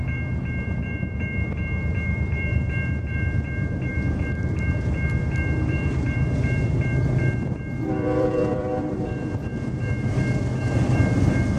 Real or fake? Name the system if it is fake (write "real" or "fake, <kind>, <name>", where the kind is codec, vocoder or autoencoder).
fake, vocoder, BigVGAN v2